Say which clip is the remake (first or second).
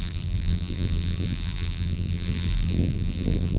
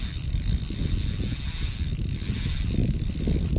first